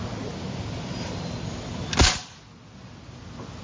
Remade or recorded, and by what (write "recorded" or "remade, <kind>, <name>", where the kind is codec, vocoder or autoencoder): recorded